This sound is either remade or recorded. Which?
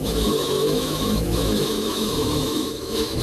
remade